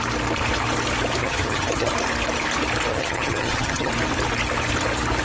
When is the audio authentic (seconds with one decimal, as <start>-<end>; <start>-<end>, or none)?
0.0-1.2; 1.9-2.9; 3.9-5.2